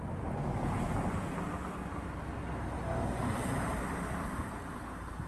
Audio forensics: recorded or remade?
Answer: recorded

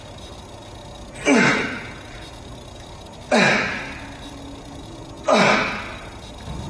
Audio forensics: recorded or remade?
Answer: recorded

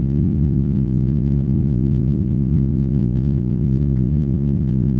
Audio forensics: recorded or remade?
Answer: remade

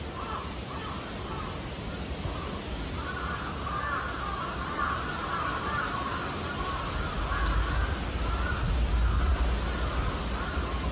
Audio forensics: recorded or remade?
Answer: recorded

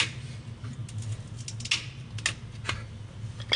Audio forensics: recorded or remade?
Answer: recorded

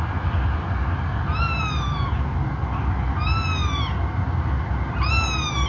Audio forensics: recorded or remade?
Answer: recorded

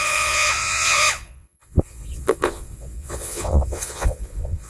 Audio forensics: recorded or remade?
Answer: remade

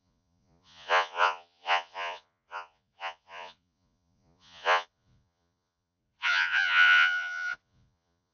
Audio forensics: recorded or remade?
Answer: remade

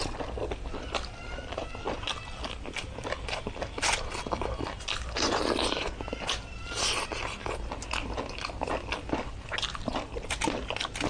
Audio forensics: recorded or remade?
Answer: recorded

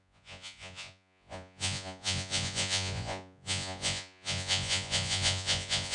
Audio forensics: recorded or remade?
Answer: remade